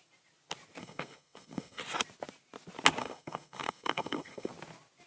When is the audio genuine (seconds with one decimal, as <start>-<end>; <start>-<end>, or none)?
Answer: 0.0-0.8; 1.8-3.0; 4.5-5.1